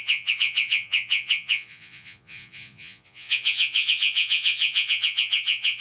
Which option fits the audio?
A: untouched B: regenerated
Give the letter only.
B